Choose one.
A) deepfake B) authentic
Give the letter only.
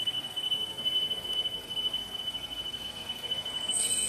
A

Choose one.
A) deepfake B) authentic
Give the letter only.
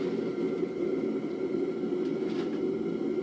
B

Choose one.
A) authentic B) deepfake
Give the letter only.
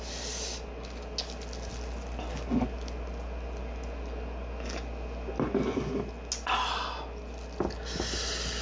A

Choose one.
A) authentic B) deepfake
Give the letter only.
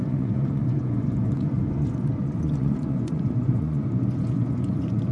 B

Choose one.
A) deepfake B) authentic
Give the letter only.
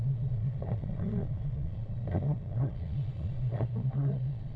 A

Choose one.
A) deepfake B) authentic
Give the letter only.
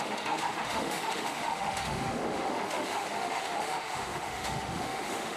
A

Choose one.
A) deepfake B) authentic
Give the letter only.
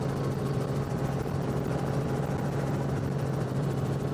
A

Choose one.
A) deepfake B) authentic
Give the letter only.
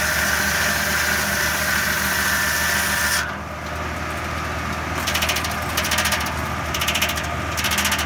B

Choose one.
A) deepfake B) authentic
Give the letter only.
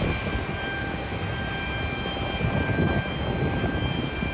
B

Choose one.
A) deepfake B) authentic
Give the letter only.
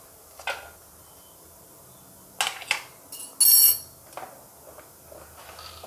B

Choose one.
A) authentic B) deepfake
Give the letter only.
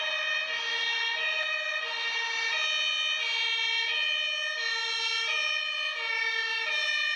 A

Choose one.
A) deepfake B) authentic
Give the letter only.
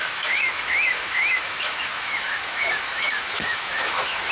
A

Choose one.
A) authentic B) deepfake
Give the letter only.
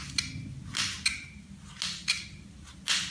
A